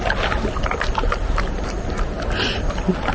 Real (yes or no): yes